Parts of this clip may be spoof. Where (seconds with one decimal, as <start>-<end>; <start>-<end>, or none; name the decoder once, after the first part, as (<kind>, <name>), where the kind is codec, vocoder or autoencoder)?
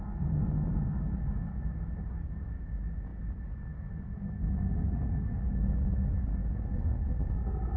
none